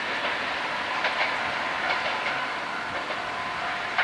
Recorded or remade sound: remade